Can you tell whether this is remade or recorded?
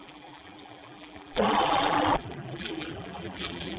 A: remade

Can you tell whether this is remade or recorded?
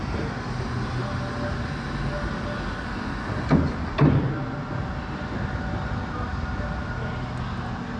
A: recorded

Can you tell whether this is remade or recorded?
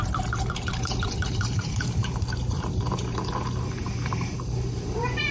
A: remade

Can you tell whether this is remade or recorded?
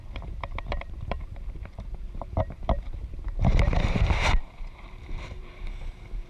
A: remade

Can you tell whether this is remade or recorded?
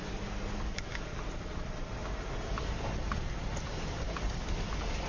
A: recorded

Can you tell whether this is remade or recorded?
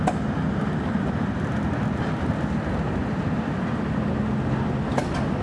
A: recorded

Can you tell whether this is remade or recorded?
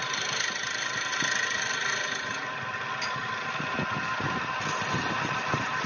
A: remade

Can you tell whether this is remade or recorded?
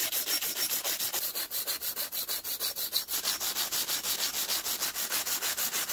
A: recorded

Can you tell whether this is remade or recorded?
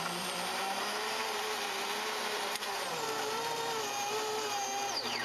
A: remade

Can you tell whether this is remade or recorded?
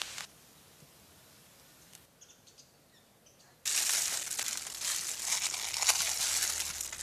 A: recorded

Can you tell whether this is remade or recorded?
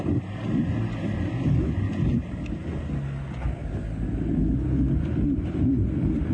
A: recorded